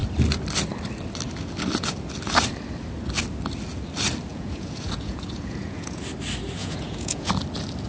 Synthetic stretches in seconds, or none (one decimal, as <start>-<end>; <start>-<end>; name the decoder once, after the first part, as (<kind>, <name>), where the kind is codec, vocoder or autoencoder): 4.3-6.0 (vocoder, Vocos); 6.6-7.3